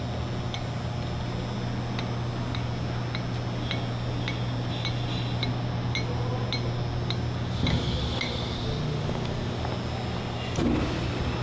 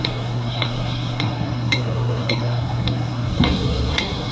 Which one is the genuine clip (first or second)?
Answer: first